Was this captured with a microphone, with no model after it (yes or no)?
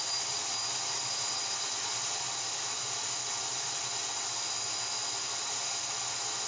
yes